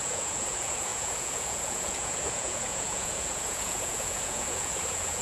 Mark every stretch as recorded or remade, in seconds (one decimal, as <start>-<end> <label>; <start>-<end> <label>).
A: 0.0-5.2 remade